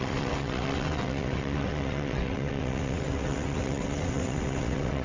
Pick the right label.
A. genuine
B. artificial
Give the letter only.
B